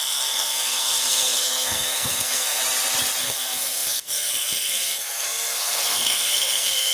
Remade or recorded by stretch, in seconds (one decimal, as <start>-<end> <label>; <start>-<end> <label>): 0.0-2.6 remade; 2.6-3.2 recorded; 3.2-6.9 remade